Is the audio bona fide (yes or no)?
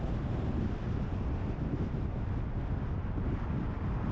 yes